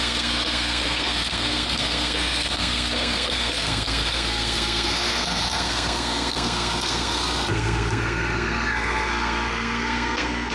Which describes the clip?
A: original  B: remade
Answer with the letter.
B